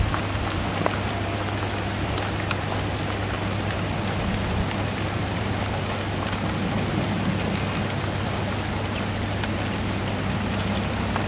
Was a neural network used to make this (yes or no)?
no